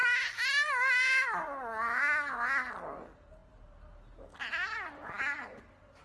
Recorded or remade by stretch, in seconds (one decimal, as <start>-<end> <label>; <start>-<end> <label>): 0.0-6.0 recorded